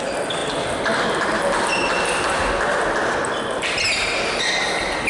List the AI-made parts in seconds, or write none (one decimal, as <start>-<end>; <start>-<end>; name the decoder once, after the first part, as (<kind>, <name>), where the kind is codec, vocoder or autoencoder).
none